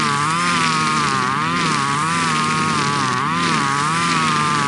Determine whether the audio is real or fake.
real